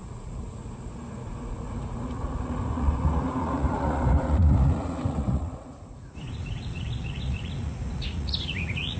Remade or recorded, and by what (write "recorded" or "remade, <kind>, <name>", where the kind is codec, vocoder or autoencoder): remade, vocoder, Vocos